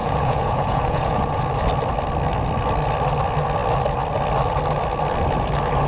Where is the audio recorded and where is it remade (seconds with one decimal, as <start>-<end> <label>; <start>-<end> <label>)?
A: 0.0-1.4 remade; 1.4-5.9 recorded